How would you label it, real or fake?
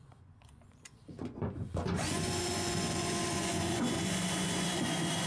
fake